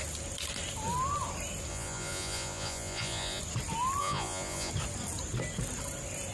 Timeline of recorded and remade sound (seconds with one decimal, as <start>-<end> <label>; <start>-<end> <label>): 0.0-1.7 recorded; 1.7-3.4 remade; 3.4-4.0 recorded; 4.0-4.7 remade; 4.7-6.3 recorded